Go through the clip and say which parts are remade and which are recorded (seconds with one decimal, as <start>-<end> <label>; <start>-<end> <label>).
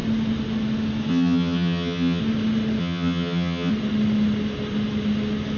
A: 0.0-1.1 recorded; 1.1-2.2 remade; 2.2-2.8 recorded; 2.8-3.7 remade; 3.7-5.6 recorded